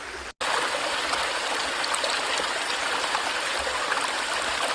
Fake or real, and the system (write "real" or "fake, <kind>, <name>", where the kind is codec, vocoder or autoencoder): real